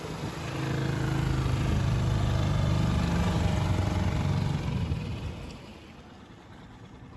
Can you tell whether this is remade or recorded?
recorded